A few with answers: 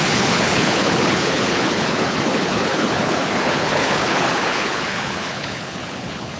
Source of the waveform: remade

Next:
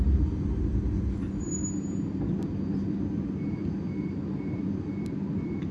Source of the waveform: recorded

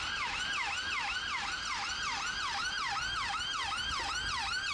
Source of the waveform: recorded